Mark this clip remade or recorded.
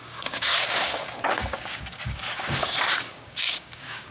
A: remade